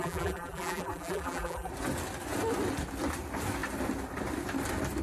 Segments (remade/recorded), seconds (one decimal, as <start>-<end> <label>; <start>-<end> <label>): 0.0-1.7 remade; 1.7-5.0 recorded